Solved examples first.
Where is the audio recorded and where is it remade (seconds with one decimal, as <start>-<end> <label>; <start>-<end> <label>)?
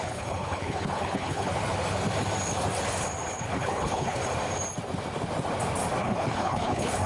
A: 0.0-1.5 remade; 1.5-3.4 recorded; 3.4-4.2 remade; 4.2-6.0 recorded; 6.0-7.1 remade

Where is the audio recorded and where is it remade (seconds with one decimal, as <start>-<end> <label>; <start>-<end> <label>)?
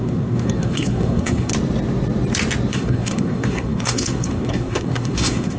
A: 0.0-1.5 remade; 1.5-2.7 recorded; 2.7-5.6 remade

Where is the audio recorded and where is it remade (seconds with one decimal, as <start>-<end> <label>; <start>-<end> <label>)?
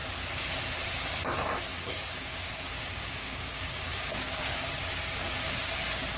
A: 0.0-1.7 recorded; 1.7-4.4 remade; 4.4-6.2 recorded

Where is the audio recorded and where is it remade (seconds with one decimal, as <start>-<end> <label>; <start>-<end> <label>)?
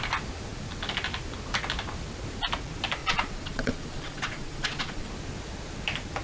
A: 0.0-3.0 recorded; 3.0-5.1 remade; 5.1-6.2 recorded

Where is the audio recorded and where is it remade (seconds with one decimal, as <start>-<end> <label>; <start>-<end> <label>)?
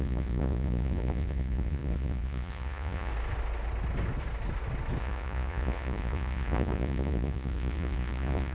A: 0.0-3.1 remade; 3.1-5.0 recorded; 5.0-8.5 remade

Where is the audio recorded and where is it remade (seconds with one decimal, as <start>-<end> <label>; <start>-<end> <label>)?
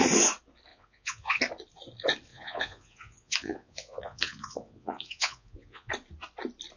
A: 0.0-0.7 recorded; 0.7-1.4 remade; 1.4-2.3 recorded; 2.3-5.9 remade; 5.9-6.8 recorded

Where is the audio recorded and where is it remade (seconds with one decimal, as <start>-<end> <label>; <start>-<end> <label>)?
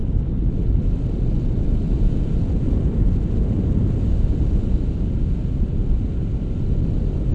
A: 0.0-7.3 recorded